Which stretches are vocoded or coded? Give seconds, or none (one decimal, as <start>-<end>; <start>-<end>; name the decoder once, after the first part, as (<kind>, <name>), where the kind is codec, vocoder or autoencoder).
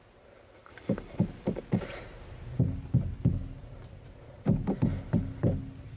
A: 0.7-2.6 (vocoder, BigVGAN v2); 3.6-4.7